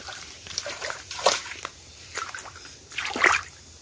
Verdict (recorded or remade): remade